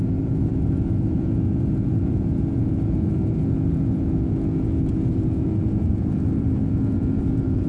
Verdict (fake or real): fake